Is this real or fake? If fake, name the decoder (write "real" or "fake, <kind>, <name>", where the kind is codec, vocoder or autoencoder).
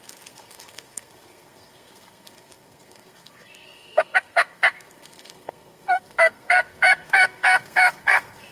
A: fake, codec, SNAC